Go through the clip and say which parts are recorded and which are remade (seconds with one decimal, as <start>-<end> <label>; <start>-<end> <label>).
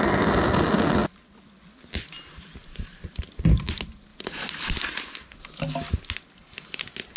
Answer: 0.0-2.6 recorded; 2.6-3.3 remade; 3.3-4.1 recorded; 4.1-5.5 remade; 5.5-7.2 recorded